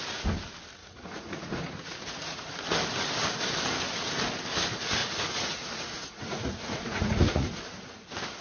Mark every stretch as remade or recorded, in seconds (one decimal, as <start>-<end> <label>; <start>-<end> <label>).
0.0-0.8 recorded; 0.8-2.5 remade; 2.5-5.0 recorded; 5.0-7.6 remade; 7.6-8.4 recorded